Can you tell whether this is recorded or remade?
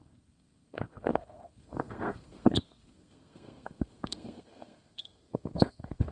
remade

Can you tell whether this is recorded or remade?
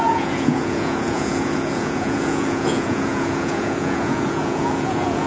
remade